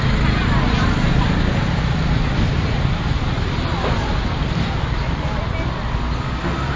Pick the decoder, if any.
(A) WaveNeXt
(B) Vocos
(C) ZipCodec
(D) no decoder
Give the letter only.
D